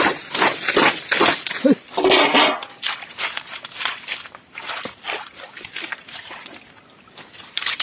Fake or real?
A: real